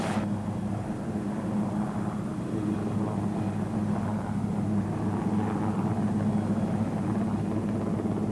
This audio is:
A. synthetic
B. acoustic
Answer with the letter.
B